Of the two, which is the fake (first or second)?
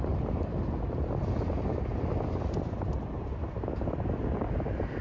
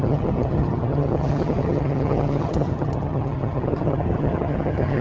second